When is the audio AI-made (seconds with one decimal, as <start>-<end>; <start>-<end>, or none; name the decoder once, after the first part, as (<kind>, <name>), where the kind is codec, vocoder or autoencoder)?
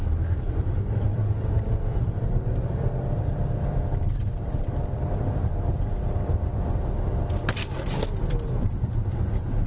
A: 0.0-1.2 (vocoder, BigVGAN v2); 2.0-6.5; 8.2-9.7